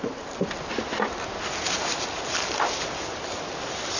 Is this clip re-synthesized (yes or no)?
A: no